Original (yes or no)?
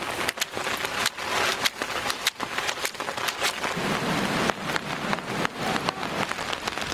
yes